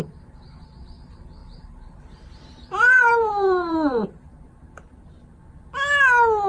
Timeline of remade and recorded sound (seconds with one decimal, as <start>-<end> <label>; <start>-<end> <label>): 0.0-1.4 recorded; 1.4-5.2 remade; 5.2-6.5 recorded